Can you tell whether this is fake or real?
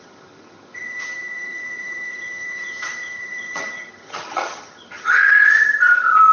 fake